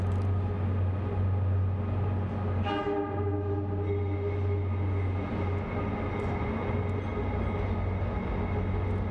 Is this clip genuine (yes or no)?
yes